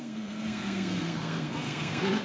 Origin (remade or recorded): remade